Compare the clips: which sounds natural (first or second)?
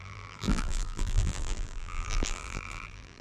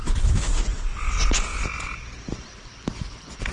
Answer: second